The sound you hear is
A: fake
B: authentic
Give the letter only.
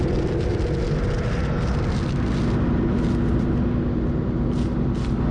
B